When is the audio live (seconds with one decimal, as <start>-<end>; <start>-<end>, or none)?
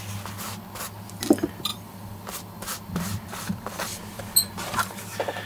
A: 0.0-1.7; 4.2-5.5